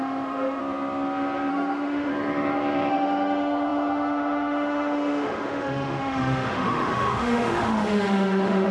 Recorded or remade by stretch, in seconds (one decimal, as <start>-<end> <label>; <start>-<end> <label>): 0.0-0.6 remade; 0.6-1.5 recorded; 1.5-2.1 remade; 2.1-2.9 recorded; 2.9-8.7 remade